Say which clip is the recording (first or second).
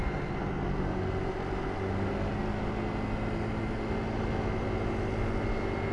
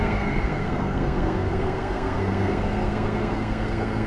first